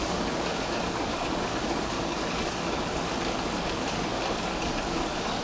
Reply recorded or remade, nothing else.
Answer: remade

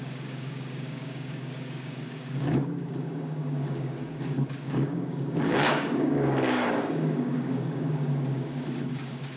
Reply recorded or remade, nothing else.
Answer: remade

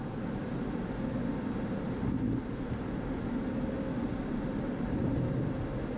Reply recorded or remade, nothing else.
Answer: recorded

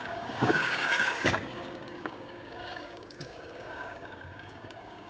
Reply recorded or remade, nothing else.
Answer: remade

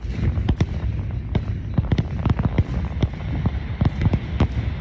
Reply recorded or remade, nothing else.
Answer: recorded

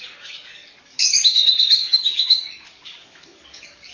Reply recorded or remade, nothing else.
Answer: remade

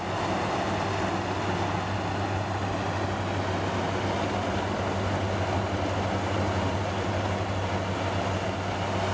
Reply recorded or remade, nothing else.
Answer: recorded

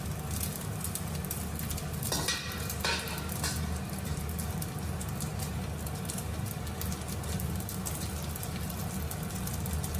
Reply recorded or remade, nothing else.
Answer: recorded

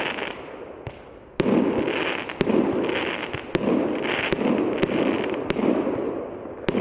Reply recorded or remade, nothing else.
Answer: recorded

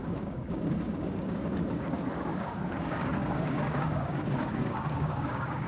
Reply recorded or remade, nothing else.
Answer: remade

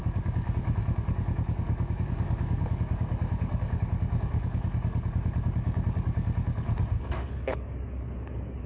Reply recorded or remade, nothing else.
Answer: remade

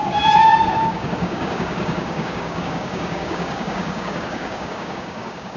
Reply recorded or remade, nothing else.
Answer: remade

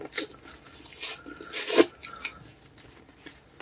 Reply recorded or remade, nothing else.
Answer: recorded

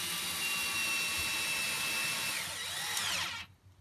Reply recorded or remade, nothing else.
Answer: recorded